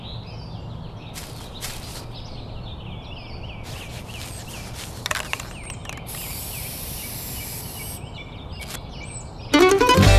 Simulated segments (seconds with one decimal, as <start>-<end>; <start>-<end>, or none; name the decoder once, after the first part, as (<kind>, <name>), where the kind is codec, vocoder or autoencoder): none